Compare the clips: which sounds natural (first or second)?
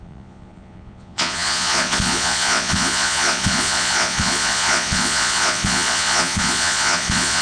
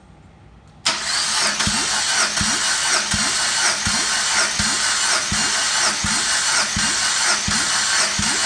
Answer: second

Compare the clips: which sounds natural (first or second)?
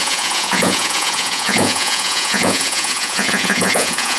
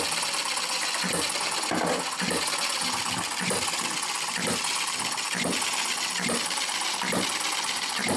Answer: second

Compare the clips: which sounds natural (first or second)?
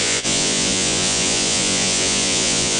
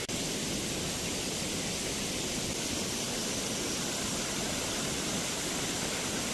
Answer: second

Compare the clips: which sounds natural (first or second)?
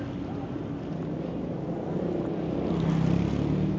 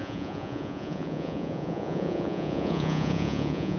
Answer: first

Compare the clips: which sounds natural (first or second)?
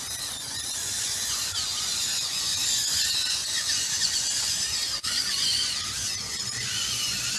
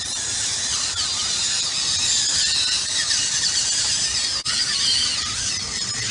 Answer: second